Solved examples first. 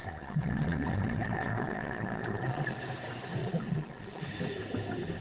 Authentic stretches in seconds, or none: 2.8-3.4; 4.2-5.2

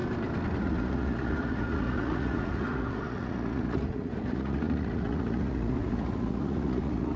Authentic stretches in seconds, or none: 0.0-0.6

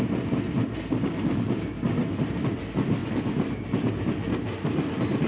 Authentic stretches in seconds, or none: 0.0-5.3

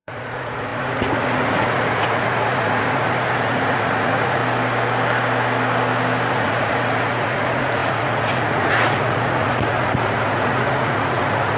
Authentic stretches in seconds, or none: 4.4-6.3

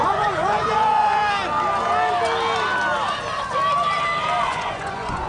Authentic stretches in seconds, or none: 1.2-4.4